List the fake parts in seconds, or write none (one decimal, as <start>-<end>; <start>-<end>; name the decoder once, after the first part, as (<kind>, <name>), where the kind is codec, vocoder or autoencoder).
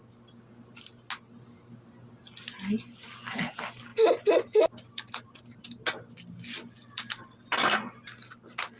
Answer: 3.9-5.4 (vocoder, BigVGAN v2)